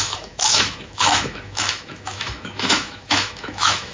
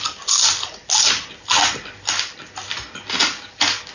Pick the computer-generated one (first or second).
first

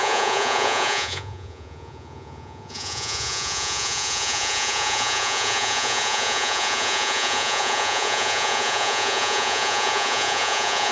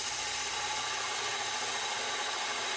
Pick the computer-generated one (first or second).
first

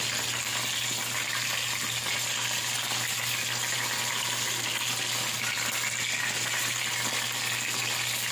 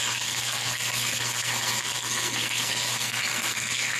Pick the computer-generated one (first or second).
second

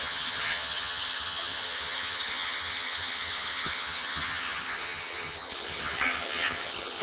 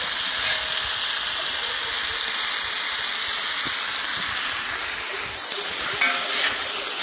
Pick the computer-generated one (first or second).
first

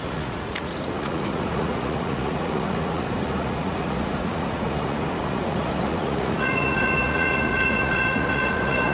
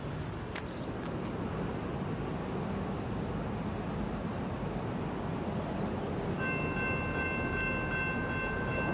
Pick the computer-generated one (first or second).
first